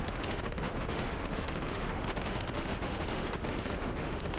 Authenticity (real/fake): fake